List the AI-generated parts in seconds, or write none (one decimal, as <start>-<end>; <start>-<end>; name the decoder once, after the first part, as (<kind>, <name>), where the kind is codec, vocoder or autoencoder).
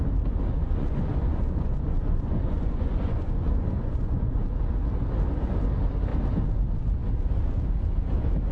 0.6-4.4 (vocoder, Vocos)